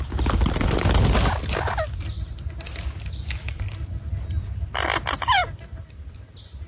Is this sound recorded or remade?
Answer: recorded